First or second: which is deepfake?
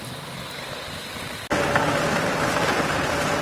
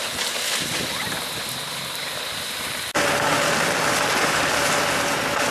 first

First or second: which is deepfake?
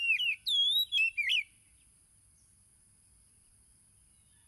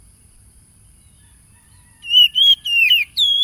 second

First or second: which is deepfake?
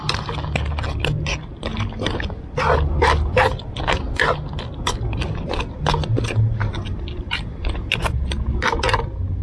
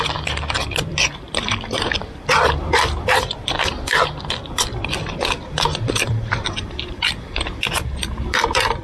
second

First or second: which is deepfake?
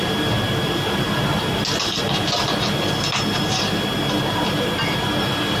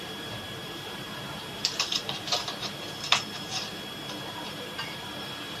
second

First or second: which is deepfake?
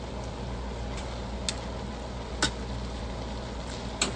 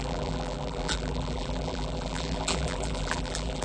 second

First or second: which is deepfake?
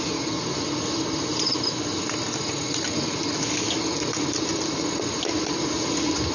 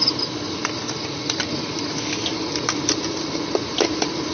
second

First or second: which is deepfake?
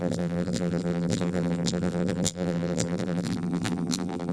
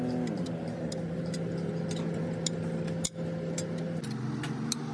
first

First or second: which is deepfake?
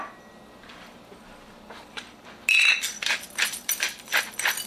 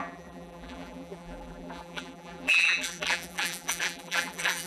second